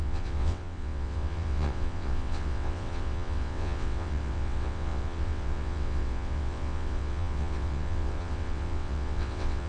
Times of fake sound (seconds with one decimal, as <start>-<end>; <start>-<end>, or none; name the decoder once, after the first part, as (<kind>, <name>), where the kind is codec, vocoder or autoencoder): 0.0-9.7 (vocoder, WaveNeXt)